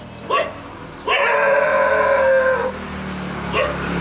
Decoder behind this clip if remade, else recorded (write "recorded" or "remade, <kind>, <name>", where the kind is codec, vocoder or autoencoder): recorded